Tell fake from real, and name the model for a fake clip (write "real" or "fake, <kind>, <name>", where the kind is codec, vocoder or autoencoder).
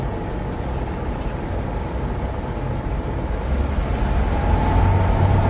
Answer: real